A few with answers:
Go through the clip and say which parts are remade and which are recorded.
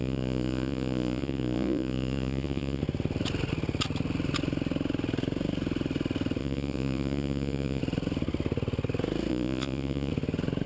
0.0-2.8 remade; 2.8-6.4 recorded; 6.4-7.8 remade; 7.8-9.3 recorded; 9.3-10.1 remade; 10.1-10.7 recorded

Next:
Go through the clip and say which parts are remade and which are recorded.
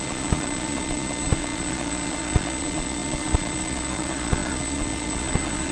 0.0-5.7 remade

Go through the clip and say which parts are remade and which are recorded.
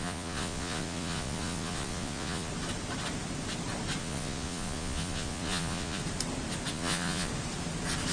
0.0-2.5 remade; 2.5-4.0 recorded; 4.0-6.0 remade; 6.0-6.7 recorded; 6.7-7.3 remade; 7.3-8.1 recorded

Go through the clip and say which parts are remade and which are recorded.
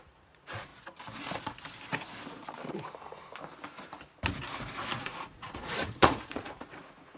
0.0-0.7 remade; 0.7-5.0 recorded; 5.0-7.2 remade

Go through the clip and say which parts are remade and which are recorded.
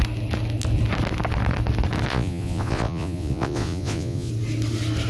0.0-2.1 recorded; 2.1-4.3 remade; 4.3-5.1 recorded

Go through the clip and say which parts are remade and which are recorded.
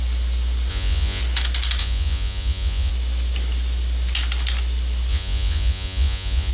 0.0-0.7 recorded; 0.7-1.2 remade; 1.2-1.8 recorded; 1.8-2.9 remade; 2.9-5.1 recorded; 5.1-6.5 remade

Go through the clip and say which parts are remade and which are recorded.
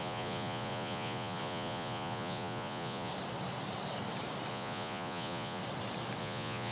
0.0-3.1 remade; 3.1-4.5 recorded; 4.5-5.6 remade; 5.6-6.2 recorded; 6.2-6.7 remade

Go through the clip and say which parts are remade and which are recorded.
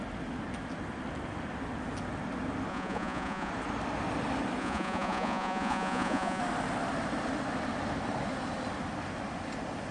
0.0-2.7 recorded; 2.7-3.5 remade; 3.5-4.6 recorded; 4.6-6.4 remade; 6.4-9.9 recorded